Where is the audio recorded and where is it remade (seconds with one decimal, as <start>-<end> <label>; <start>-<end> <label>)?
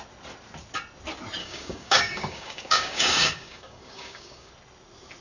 0.0-1.4 recorded; 1.4-4.5 remade; 4.5-5.2 recorded